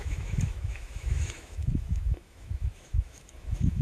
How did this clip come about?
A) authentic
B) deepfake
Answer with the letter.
B